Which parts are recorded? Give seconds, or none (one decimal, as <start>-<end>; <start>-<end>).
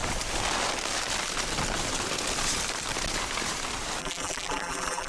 0.0-4.0